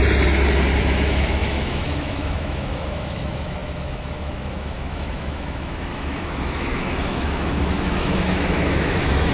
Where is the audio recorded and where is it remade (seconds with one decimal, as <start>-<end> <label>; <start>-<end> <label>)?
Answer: 0.0-0.8 recorded; 0.8-9.3 remade